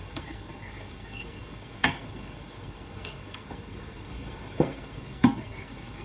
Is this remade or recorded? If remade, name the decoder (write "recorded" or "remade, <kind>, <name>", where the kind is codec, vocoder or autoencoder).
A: remade, codec, SNAC